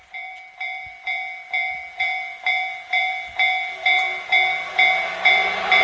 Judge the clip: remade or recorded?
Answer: remade